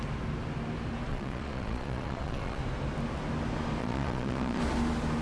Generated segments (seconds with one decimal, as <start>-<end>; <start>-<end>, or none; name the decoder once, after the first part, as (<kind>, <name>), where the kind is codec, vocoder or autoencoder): 1.1-2.6 (vocoder, Vocos); 3.8-4.6